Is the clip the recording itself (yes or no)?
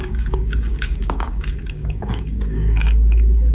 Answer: no